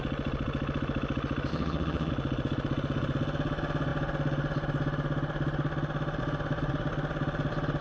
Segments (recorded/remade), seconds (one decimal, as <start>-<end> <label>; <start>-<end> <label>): 0.0-1.5 recorded; 1.5-2.1 remade; 2.1-7.8 recorded

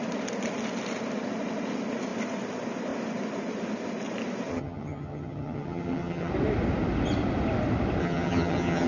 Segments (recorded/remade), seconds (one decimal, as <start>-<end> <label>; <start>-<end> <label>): 0.0-4.5 recorded; 4.5-6.3 remade; 6.3-8.0 recorded; 8.0-8.9 remade

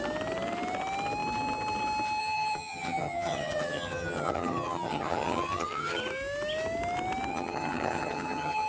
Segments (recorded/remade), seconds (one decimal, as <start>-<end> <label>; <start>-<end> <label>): 0.0-2.2 recorded; 2.2-6.0 remade; 6.0-7.3 recorded; 7.3-8.7 remade

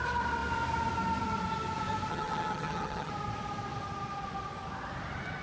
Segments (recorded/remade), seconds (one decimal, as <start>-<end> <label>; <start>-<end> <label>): 0.0-2.1 recorded; 2.1-3.1 remade; 3.1-5.4 recorded